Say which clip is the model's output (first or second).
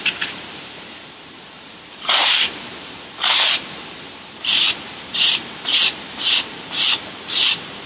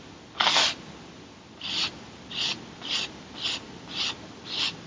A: first